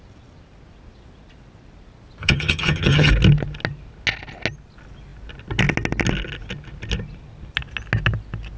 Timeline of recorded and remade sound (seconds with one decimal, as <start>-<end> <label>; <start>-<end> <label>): 0.0-2.2 recorded; 2.2-3.1 remade; 3.1-8.6 recorded